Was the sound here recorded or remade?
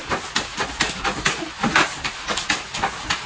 recorded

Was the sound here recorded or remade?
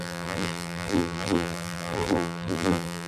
remade